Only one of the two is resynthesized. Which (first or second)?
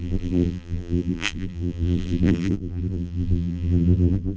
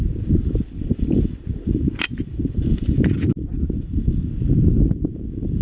first